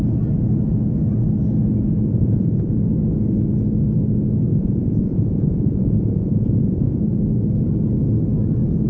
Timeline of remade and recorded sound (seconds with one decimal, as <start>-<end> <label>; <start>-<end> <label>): 0.0-2.1 recorded; 2.1-2.7 remade; 2.7-4.5 recorded; 4.5-7.0 remade; 7.0-8.9 recorded